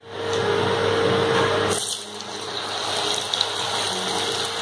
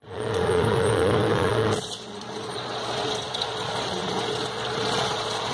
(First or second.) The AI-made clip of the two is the second